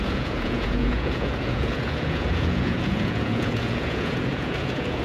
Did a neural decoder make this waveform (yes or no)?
yes